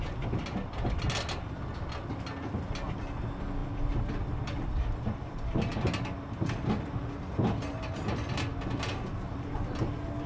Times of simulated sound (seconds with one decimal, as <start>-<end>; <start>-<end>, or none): none